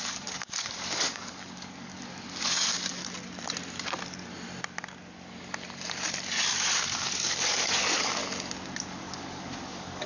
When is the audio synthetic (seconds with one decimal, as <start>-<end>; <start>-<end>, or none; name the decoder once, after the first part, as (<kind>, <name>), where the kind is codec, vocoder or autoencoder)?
0.0-3.0 (codec, DAC); 6.8-8.2; 9.0-10.1